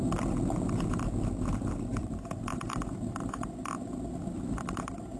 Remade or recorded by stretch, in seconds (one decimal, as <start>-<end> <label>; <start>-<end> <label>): 0.0-1.9 recorded; 1.9-5.2 remade